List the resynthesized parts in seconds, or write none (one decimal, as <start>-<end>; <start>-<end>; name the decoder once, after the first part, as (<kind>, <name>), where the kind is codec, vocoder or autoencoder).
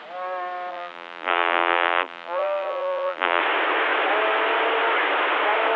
0.7-3.4 (vocoder, BigVGAN v2)